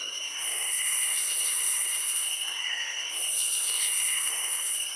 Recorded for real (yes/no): no